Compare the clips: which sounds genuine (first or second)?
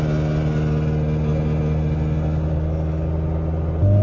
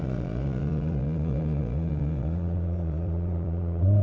first